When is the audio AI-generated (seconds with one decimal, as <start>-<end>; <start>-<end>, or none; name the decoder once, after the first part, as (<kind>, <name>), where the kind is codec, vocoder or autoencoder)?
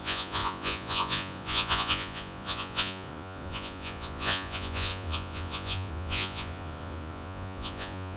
0.0-8.2 (vocoder, Vocos)